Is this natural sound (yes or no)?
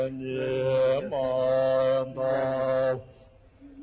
yes